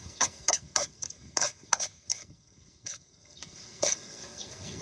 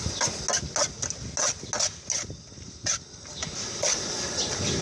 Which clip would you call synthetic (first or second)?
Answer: first